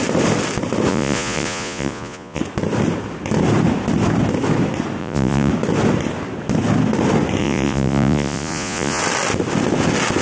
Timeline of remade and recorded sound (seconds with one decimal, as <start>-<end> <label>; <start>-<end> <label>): 0.0-0.9 recorded; 0.9-2.4 remade; 2.4-5.0 recorded; 5.0-5.5 remade; 5.5-7.4 recorded; 7.4-9.0 remade; 9.0-10.2 recorded